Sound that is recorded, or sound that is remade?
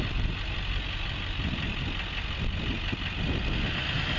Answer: recorded